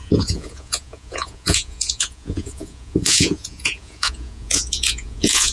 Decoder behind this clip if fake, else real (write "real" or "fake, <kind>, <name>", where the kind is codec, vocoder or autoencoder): fake, vocoder, Vocos